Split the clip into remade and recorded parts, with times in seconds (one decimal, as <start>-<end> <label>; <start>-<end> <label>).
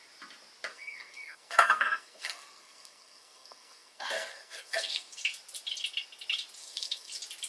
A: 0.0-0.7 recorded; 0.7-5.2 remade; 5.2-6.6 recorded; 6.6-7.1 remade; 7.1-7.5 recorded